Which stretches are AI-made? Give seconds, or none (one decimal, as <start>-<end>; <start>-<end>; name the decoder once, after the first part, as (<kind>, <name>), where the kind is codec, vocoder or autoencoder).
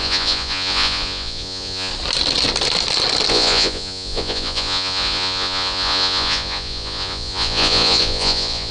0.0-1.9 (vocoder, Vocos); 3.3-8.7